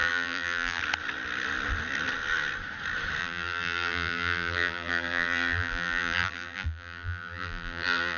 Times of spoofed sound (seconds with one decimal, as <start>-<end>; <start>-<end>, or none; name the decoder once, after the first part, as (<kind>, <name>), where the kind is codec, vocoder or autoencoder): 0.0-0.8 (vocoder, BigVGAN v2); 3.2-8.2